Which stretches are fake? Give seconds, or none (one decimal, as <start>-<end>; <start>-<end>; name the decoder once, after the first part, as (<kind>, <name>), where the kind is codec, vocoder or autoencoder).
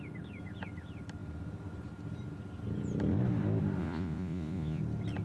3.8-4.8 (vocoder, Vocos)